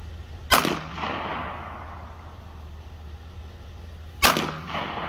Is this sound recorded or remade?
recorded